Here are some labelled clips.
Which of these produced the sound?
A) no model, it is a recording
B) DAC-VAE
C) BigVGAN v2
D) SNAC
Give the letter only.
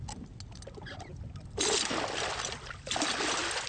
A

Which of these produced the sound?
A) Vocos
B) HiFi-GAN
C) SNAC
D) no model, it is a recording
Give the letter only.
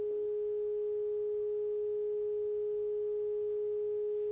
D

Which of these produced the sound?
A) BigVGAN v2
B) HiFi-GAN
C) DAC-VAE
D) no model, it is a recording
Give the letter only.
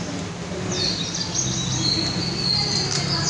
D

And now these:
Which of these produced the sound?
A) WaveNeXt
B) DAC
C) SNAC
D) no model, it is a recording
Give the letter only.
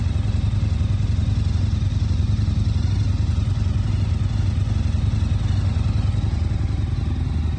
D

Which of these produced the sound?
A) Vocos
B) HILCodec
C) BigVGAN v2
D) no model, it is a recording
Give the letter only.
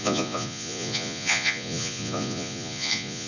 A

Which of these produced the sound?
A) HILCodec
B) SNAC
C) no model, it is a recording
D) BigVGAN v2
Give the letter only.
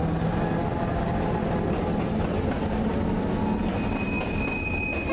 C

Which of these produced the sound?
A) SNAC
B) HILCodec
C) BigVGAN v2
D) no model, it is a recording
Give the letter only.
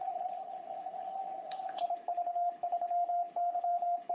B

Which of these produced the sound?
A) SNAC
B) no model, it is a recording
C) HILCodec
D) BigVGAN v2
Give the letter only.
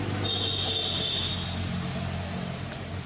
B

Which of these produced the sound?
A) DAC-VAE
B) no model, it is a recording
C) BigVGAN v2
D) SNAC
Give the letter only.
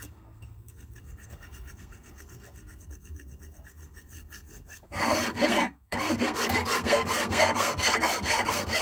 D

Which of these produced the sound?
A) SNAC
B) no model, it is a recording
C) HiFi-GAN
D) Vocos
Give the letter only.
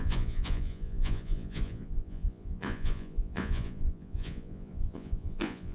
D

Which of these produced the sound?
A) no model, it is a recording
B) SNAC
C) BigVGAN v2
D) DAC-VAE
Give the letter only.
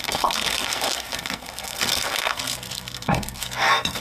B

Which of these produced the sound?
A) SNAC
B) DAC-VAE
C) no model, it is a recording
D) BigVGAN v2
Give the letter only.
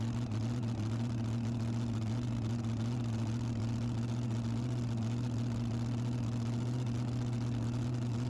C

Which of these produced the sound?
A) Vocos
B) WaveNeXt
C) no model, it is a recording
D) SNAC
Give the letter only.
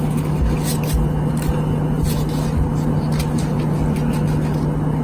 C